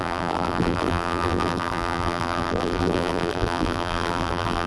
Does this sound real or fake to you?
fake